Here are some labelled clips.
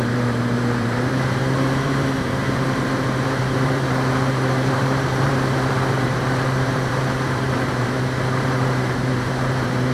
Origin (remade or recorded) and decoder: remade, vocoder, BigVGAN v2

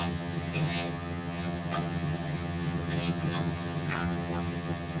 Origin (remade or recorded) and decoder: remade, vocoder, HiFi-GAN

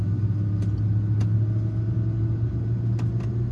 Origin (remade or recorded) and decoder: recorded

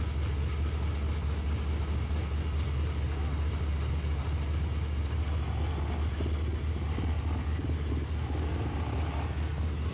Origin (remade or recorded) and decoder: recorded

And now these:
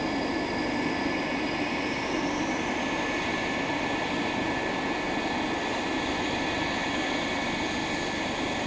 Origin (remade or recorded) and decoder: recorded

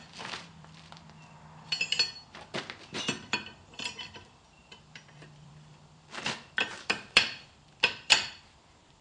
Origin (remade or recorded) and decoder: remade, vocoder, BigVGAN v2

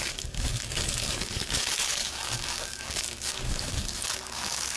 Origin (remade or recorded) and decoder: remade, codec, DAC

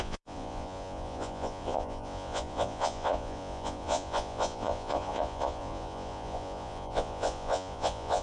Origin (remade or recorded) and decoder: remade, vocoder, Vocos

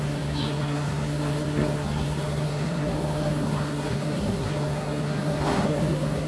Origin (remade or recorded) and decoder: remade, codec, SNAC